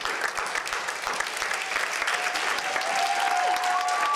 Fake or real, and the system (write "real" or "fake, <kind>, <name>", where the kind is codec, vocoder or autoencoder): real